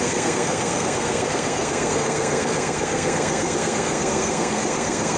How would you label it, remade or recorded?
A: remade